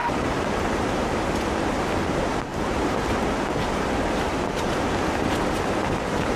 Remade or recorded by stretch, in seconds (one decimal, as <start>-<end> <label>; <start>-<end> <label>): 0.0-1.4 remade; 1.4-2.5 recorded; 2.5-3.4 remade; 3.4-6.4 recorded